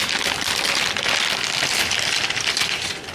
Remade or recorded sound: recorded